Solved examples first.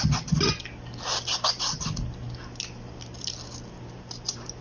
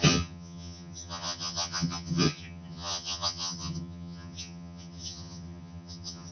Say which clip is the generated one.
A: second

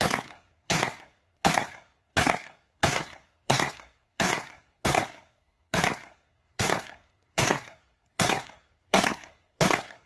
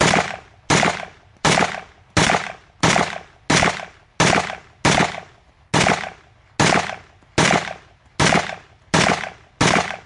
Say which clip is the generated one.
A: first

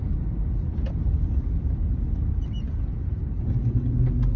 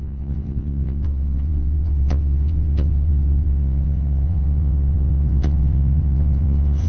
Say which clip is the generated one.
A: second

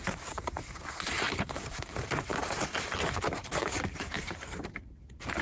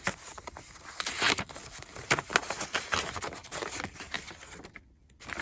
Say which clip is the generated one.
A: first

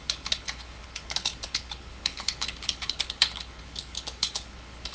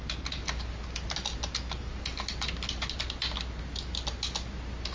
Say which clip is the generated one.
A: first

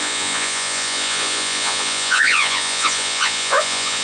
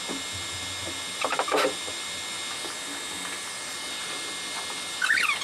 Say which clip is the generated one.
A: first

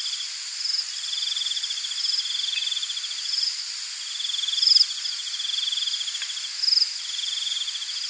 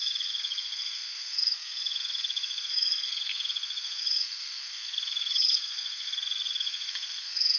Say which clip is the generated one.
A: second